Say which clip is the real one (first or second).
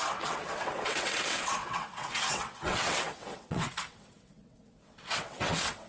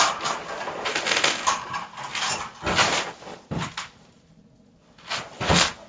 second